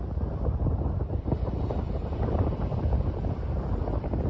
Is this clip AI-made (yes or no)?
no